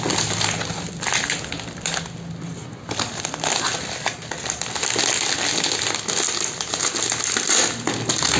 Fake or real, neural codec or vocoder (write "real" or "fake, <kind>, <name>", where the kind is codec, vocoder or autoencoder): real